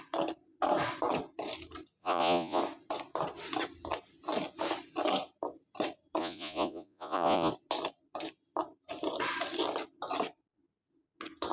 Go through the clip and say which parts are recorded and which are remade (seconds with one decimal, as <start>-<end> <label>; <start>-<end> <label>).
0.0-2.0 recorded; 2.0-2.6 remade; 2.6-6.2 recorded; 6.2-7.5 remade; 7.5-11.5 recorded